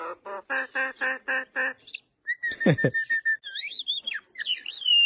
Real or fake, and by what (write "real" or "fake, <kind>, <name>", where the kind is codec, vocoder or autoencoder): real